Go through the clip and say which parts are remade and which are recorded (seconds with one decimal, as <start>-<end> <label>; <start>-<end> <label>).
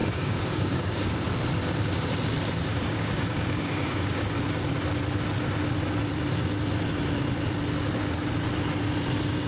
0.0-1.1 remade; 1.1-2.7 recorded; 2.7-4.3 remade; 4.3-9.5 recorded